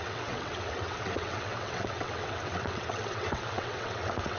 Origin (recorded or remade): remade